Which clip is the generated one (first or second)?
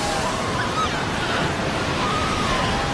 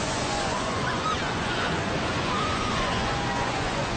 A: second